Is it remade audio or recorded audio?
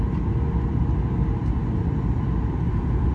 recorded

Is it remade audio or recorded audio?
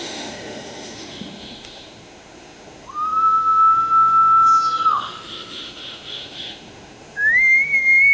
remade